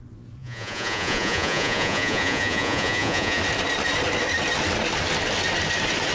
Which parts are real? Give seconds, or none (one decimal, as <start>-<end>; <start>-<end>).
0.0-0.4; 3.4-6.1